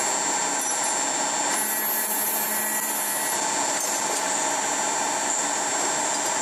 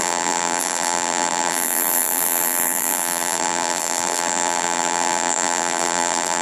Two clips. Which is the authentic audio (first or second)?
first